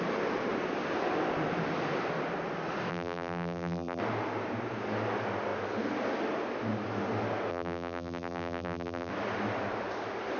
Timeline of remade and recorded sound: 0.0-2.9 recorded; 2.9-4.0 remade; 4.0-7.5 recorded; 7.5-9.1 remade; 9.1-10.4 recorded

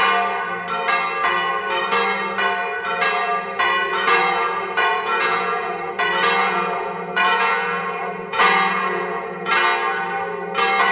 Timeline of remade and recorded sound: 0.0-3.9 recorded; 3.9-5.9 remade; 5.9-6.4 recorded; 6.4-9.5 remade; 9.5-10.9 recorded

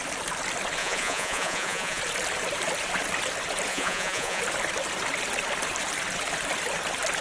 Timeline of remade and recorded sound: 0.0-0.8 recorded; 0.8-2.0 remade; 2.0-3.7 recorded; 3.7-4.4 remade; 4.4-7.2 recorded